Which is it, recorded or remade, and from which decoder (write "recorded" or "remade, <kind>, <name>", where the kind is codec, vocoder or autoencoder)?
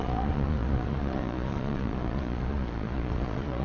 remade, vocoder, Vocos